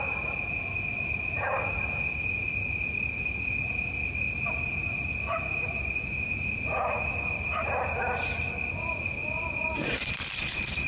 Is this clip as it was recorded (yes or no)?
yes